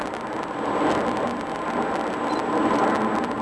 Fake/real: real